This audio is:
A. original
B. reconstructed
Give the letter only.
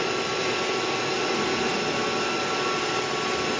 A